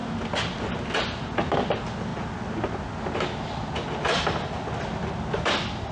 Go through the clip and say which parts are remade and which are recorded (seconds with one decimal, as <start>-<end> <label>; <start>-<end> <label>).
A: 0.0-5.9 recorded